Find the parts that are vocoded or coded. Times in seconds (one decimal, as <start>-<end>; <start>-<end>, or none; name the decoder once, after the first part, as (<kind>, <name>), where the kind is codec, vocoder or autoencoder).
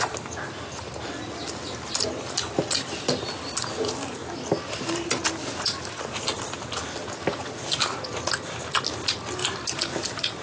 none